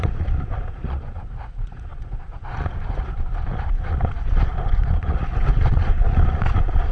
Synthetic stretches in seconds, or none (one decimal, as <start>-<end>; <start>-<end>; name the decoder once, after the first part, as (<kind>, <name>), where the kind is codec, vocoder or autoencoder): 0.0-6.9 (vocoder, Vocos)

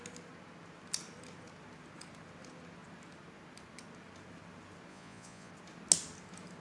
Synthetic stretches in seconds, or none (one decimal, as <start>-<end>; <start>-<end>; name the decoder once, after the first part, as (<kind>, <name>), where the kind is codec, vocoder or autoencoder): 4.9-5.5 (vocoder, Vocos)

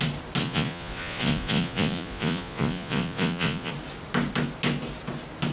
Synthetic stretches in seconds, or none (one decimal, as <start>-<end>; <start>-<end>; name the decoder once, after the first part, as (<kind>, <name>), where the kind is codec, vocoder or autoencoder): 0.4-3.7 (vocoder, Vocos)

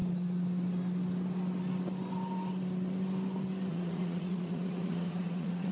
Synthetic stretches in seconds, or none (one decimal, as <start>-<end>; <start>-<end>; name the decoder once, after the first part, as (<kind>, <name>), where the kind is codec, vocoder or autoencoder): 3.7-5.7 (vocoder, Vocos)